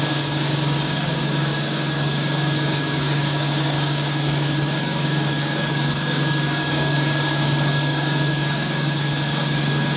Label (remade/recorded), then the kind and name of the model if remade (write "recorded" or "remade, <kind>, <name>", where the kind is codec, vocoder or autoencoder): remade, codec, DAC